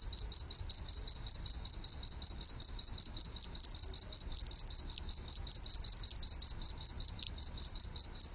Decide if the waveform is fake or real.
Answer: real